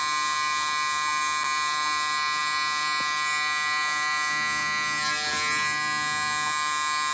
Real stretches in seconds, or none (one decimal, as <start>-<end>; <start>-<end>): 0.0-7.1